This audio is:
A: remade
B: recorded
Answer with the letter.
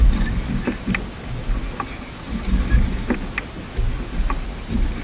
B